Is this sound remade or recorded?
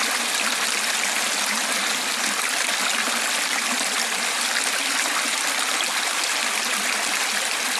recorded